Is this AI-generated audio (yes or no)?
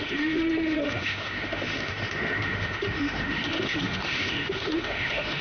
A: yes